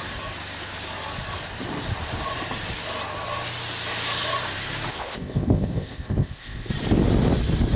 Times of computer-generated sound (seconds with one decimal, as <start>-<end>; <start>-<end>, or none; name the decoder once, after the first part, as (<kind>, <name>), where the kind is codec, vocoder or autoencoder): 4.9-6.7 (codec, ZipCodec)